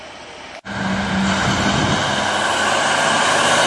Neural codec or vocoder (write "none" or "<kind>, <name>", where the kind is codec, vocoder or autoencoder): none